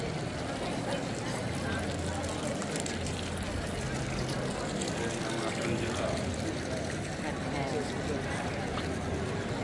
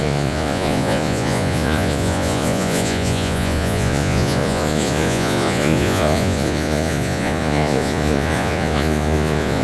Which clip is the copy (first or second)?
second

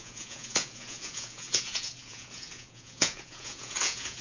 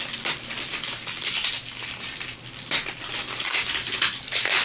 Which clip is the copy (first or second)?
first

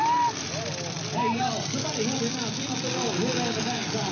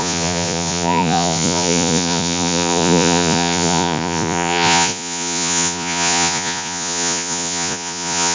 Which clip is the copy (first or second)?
second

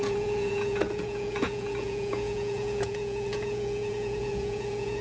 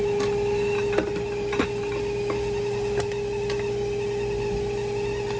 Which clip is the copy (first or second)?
first